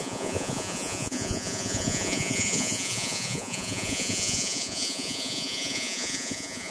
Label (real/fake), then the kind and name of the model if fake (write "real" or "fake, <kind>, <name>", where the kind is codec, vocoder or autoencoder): fake, vocoder, Vocos